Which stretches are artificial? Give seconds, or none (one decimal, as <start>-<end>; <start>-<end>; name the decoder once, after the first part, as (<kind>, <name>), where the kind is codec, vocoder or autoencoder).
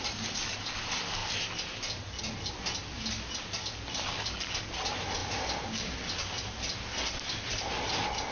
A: none